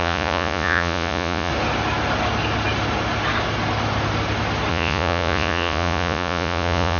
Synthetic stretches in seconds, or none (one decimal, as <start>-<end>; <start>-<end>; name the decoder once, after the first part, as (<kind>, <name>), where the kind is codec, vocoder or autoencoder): 0.0-1.5 (vocoder, Vocos); 4.7-7.0